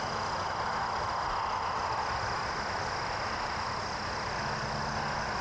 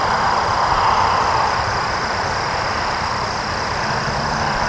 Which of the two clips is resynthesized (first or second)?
second